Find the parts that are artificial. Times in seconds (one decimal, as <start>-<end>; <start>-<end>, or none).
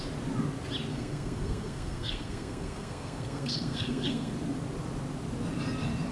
0.9-4.3